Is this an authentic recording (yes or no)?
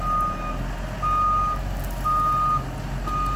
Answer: yes